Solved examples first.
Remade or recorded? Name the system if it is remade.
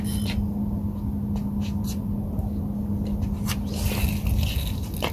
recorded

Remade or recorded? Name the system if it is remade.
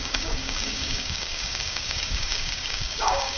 remade, codec, DAC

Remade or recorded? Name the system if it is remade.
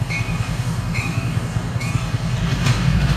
remade, codec, DAC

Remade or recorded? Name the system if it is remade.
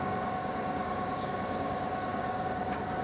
remade, codec, DAC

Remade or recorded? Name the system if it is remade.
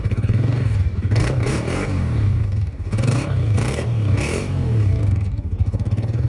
remade, codec, DAC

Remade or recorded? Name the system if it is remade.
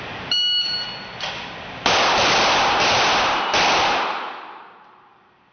recorded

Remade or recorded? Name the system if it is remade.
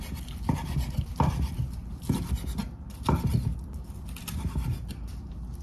recorded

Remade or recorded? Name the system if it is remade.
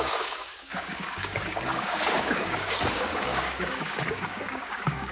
remade, codec, DAC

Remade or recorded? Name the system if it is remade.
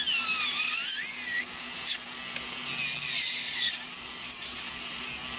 recorded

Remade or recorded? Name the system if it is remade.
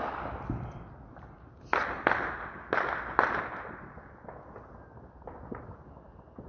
recorded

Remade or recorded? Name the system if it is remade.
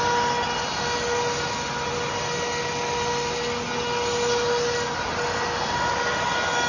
recorded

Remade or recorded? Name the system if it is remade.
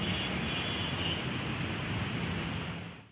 recorded